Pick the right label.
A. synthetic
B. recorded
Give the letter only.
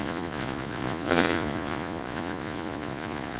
A